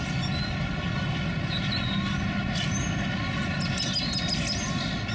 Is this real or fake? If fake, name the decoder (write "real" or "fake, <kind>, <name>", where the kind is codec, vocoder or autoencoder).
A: real